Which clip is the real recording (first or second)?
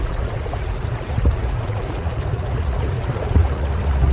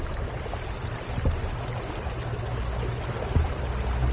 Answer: second